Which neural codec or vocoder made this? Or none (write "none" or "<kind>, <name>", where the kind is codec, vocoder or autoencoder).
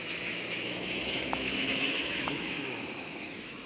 autoencoder, DAC-VAE